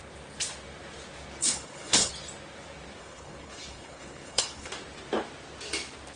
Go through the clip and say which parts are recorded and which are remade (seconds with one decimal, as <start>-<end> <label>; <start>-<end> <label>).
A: 0.0-1.4 recorded; 1.4-2.1 remade; 2.1-3.0 recorded; 3.0-4.7 remade; 4.7-6.2 recorded